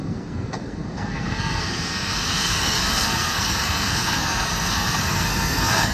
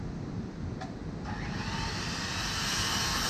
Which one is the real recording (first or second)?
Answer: second